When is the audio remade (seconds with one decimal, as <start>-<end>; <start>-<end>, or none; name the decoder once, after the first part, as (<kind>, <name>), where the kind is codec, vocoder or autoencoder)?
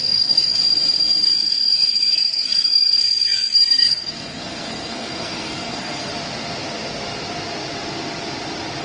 0.0-0.6 (codec, SNAC); 1.2-6.1